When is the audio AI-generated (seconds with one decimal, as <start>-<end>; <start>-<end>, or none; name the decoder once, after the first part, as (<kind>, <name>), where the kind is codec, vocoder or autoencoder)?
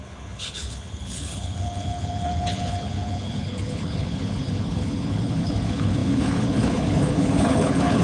0.0-8.0 (codec, HILCodec)